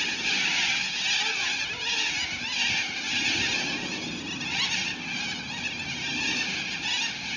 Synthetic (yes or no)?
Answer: no